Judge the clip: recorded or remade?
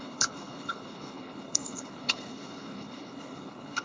remade